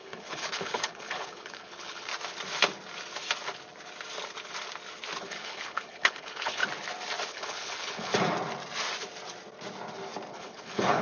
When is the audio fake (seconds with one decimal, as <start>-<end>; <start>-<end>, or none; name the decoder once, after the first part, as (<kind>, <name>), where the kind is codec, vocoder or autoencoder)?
0.0-2.1 (codec, HILCodec); 5.2-6.6; 7.3-8.1; 10.3-11.0